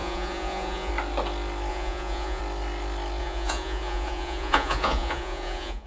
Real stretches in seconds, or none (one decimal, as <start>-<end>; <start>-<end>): 0.9-1.7; 2.4-3.2